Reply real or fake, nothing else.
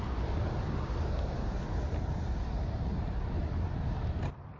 real